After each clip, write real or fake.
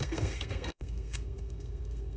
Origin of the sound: fake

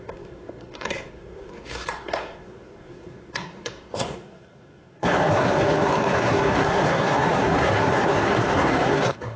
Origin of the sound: fake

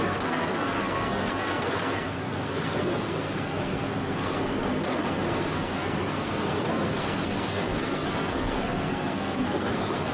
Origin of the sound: fake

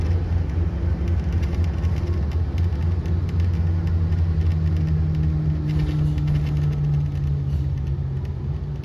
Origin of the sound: real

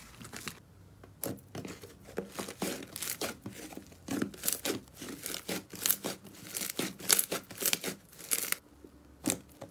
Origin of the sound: real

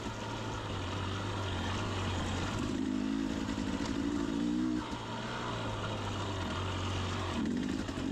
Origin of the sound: real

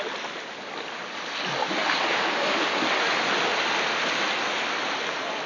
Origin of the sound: real